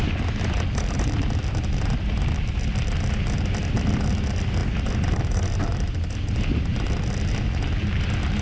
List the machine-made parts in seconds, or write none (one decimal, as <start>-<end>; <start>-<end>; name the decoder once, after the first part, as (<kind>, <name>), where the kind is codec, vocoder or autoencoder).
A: none